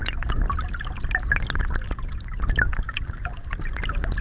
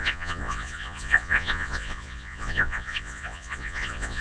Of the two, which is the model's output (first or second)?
second